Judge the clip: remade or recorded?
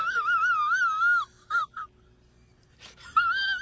recorded